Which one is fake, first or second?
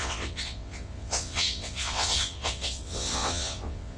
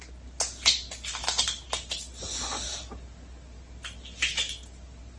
first